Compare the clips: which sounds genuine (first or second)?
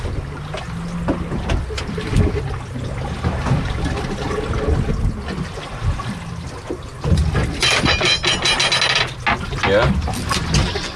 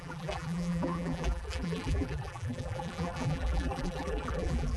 first